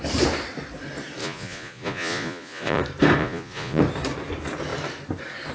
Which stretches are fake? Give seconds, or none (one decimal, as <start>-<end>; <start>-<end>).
1.2-2.8; 3.2-3.8